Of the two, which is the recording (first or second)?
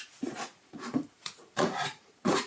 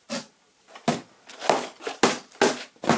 second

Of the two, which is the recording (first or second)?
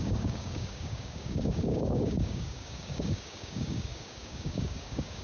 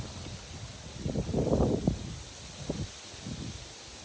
second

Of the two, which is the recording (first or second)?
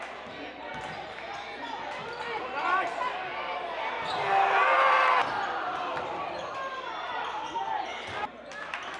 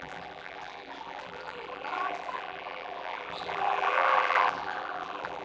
first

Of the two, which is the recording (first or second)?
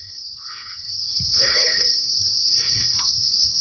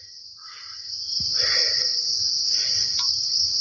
second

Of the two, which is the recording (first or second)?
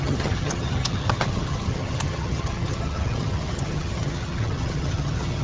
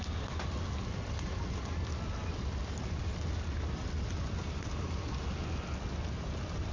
second